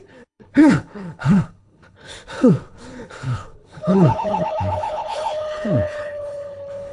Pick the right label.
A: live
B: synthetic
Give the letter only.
B